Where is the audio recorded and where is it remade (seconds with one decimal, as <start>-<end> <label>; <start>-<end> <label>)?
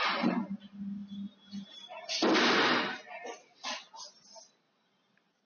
0.0-3.4 recorded; 3.4-3.9 remade; 3.9-5.4 recorded